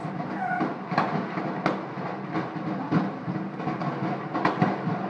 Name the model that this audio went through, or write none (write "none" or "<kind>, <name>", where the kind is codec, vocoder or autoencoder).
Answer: none